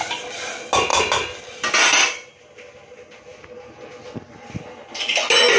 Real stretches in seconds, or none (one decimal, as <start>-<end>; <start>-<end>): 0.0-5.6